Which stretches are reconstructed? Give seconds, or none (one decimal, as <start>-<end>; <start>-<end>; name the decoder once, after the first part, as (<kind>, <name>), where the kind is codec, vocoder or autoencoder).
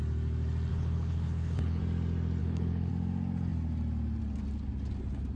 0.7-1.8 (codec, HILCodec); 2.4-2.9